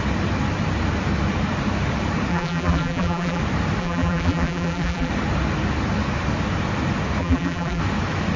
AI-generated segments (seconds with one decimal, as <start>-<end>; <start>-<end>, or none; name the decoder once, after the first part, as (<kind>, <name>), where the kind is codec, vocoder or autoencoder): 2.3-3.4 (vocoder, BigVGAN v2); 3.8-5.1; 7.2-7.8